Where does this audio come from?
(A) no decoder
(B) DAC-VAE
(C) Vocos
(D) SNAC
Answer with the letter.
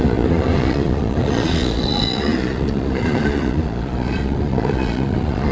C